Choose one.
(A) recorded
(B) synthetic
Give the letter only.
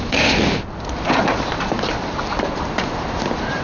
A